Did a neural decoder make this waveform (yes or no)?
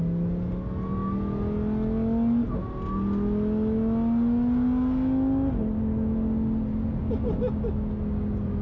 no